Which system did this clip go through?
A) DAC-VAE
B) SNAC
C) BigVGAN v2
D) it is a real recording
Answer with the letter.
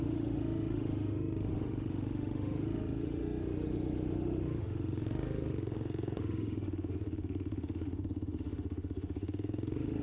A